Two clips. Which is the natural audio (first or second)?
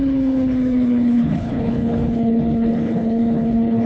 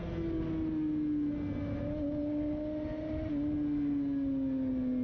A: second